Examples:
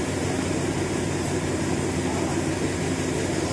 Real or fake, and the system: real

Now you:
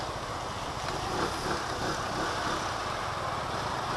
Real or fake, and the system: real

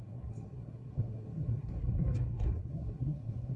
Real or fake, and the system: fake, codec, SNAC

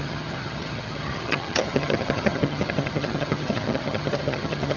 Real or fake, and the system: fake, vocoder, HiFi-GAN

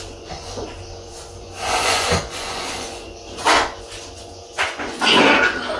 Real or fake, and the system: fake, vocoder, Vocos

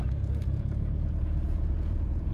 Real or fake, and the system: fake, vocoder, Vocos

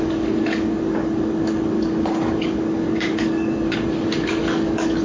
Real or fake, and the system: fake, codec, DAC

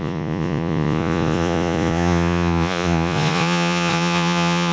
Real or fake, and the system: fake, vocoder, Vocos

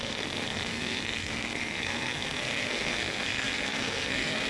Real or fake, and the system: fake, codec, SNAC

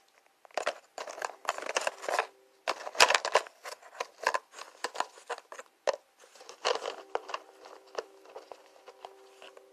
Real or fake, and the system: real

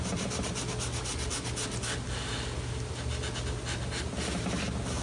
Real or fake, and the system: real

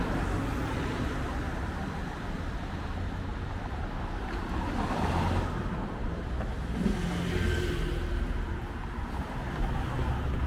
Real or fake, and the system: real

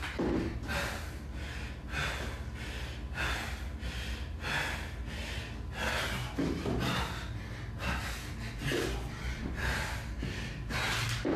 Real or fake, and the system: real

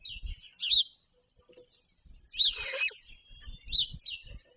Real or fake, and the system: real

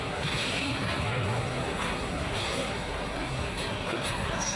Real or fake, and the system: fake, codec, SNAC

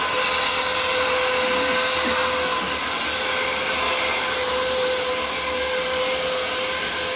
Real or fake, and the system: real